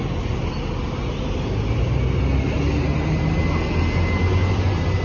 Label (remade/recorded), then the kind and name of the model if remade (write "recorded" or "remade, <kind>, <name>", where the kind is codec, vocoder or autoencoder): recorded